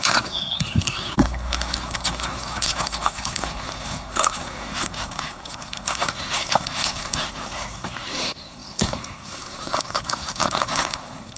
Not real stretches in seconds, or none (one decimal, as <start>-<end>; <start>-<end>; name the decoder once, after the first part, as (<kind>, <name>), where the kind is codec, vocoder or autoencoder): 0.0-11.4 (codec, SNAC)